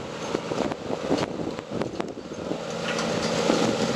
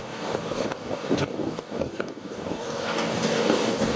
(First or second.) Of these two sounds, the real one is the first